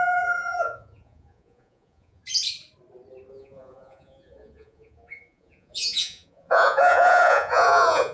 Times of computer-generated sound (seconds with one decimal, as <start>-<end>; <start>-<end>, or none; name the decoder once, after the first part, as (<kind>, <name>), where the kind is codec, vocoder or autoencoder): 0.0-2.2 (vocoder, Vocos); 3.3-8.1